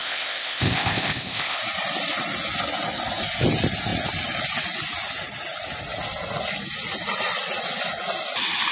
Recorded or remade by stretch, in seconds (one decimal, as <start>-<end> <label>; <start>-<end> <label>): 0.0-1.6 remade; 1.6-8.7 recorded